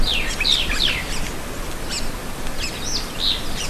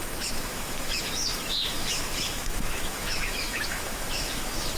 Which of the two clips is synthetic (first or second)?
second